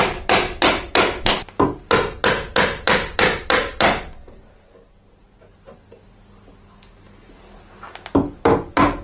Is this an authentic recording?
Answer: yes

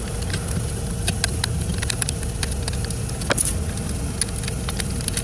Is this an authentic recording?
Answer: yes